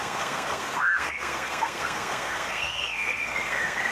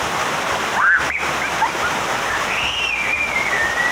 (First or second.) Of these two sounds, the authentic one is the second